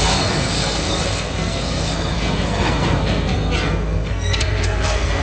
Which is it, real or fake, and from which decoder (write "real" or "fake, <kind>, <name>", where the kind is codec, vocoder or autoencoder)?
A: fake, codec, SNAC